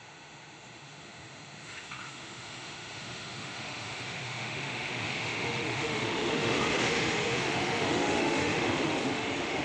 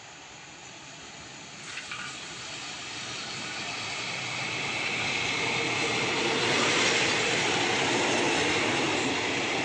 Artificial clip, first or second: first